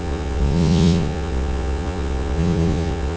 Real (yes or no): no